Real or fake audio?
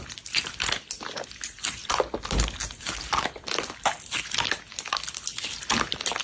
real